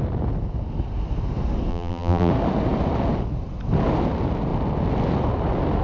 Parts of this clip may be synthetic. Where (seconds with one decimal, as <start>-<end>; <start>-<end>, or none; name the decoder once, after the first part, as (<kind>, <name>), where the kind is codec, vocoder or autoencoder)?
1.7-2.3 (vocoder, BigVGAN v2)